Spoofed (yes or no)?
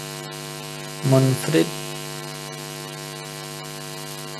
no